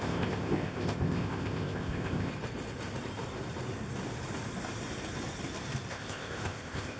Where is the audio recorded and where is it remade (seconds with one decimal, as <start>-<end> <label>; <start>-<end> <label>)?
0.0-2.3 remade; 2.3-5.9 recorded; 5.9-7.0 remade